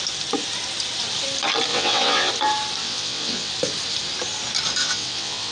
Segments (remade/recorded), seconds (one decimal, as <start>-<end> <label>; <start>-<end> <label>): 0.0-1.7 recorded; 1.7-2.3 remade; 2.3-2.8 recorded; 2.8-3.5 remade; 3.5-4.8 recorded; 4.8-5.5 remade